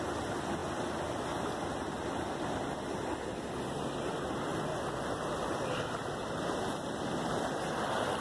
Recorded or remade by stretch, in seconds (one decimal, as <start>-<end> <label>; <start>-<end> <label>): 0.0-8.2 recorded